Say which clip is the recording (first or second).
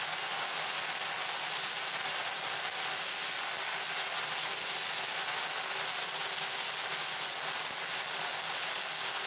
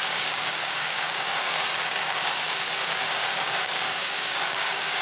first